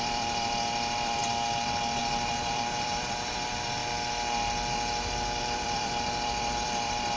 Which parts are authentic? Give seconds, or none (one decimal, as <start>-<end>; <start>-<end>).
1.2-2.0; 3.8-5.4